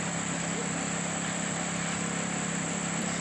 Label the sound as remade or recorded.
remade